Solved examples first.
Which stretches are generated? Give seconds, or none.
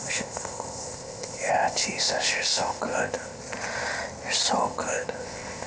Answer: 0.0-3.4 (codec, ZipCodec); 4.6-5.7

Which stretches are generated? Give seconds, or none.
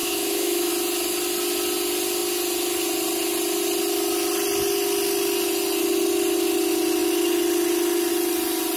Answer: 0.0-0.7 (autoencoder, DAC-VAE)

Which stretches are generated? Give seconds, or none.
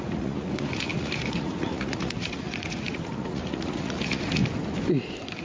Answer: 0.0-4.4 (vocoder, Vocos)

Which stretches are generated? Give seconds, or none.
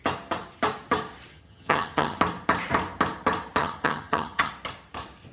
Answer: 1.3-2.2 (vocoder, HiFi-GAN); 3.6-4.5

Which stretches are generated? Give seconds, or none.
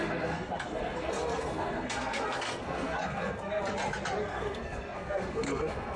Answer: 0.0-3.6 (codec, SNAC); 4.2-6.0